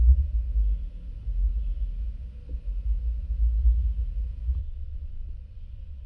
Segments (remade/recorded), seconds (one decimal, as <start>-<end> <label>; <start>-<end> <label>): 0.0-4.6 recorded; 4.6-6.1 remade

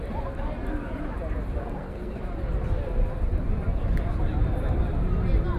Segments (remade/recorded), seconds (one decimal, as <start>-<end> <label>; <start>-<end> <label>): 0.0-1.6 recorded; 1.6-2.2 remade; 2.2-5.6 recorded

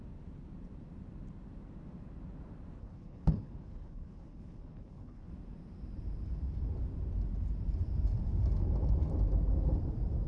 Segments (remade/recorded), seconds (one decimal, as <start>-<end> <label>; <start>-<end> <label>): 0.0-2.8 recorded; 2.8-5.3 remade; 5.3-10.3 recorded

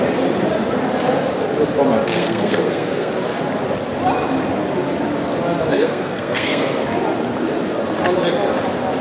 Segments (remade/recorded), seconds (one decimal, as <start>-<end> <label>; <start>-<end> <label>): 0.0-2.1 recorded; 2.1-3.1 remade; 3.1-5.7 recorded; 5.7-6.8 remade; 6.8-9.0 recorded

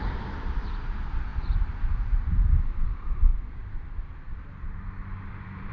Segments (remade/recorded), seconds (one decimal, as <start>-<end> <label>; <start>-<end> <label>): 0.0-5.7 remade

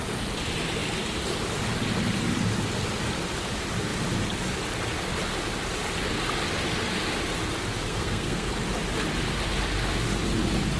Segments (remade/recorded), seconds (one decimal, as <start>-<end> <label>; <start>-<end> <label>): 0.0-7.9 recorded; 7.9-8.5 remade; 8.5-10.8 recorded

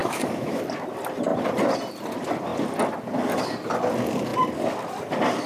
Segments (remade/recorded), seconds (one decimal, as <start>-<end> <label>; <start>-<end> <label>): 0.0-0.6 remade; 0.6-5.5 recorded